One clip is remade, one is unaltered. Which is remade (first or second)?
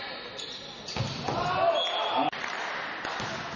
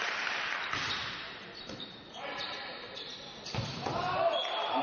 second